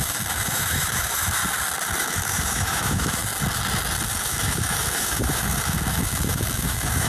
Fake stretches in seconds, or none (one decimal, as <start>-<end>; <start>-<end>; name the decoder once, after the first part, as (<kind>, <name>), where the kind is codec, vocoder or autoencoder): 0.0-1.4 (autoencoder, DAC-VAE); 2.0-3.2; 4.2-7.1